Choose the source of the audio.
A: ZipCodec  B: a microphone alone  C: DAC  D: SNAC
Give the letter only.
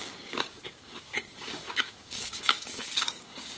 C